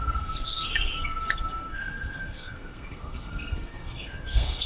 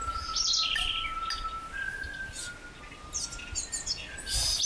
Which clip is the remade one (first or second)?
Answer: first